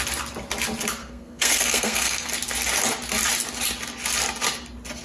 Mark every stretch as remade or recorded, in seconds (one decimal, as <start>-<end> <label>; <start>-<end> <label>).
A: 0.0-1.0 recorded; 1.0-2.3 remade; 2.3-5.0 recorded